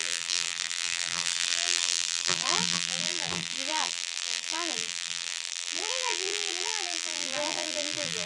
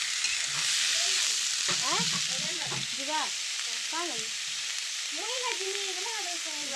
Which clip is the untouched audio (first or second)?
second